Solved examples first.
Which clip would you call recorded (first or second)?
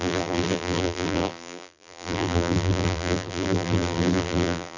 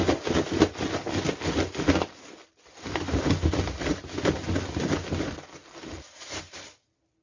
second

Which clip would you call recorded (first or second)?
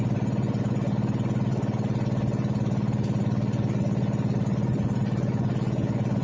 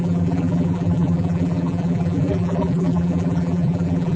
first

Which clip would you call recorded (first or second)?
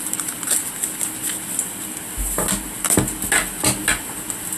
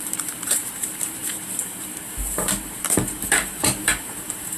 first